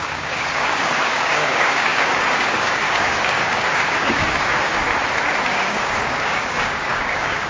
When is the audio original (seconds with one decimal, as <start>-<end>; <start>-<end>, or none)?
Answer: 4.8-5.4